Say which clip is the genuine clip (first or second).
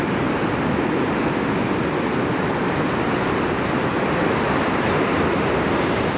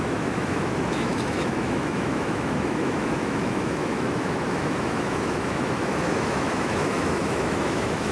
first